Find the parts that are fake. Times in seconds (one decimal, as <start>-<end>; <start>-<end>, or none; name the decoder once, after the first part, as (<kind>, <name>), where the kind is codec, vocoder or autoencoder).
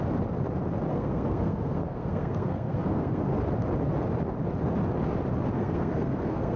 0.9-3.3 (codec, SNAC); 5.5-6.6